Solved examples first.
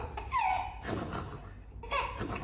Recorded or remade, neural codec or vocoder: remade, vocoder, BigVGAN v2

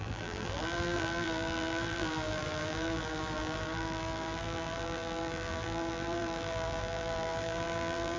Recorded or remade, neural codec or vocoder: remade, vocoder, BigVGAN v2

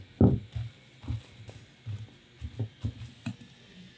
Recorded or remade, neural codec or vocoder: recorded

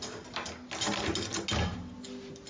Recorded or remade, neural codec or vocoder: recorded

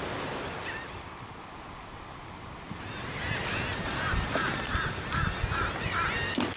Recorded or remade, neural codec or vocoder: recorded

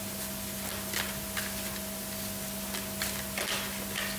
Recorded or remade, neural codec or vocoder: recorded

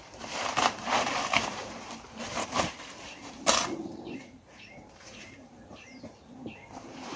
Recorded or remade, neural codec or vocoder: remade, vocoder, BigVGAN v2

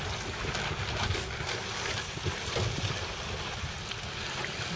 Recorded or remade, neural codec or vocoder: recorded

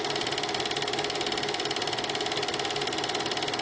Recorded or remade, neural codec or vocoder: recorded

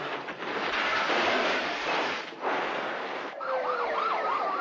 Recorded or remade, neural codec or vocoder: remade, vocoder, BigVGAN v2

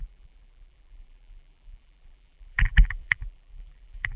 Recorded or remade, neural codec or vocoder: remade, vocoder, BigVGAN v2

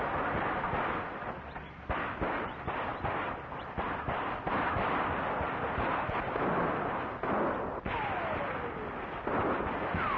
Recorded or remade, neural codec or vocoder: recorded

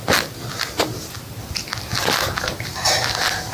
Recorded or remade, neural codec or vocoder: recorded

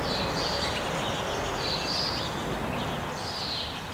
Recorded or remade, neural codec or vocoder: recorded